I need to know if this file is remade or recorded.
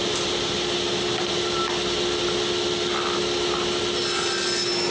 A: recorded